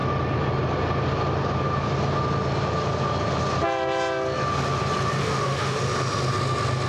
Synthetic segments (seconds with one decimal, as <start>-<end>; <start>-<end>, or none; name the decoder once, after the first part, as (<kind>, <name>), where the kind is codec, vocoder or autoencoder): 5.2-5.8 (autoencoder, DAC-VAE)